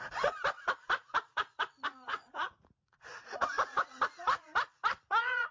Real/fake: fake